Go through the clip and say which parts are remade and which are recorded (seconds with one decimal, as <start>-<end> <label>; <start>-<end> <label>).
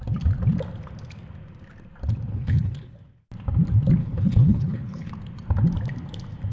0.0-2.3 recorded; 2.3-3.0 remade; 3.0-4.0 recorded; 4.0-5.1 remade; 5.1-6.5 recorded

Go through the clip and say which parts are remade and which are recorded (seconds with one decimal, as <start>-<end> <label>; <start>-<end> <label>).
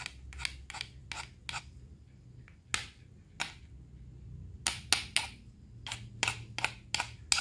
0.0-7.4 recorded